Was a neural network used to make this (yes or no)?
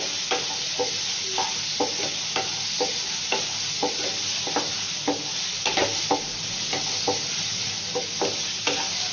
no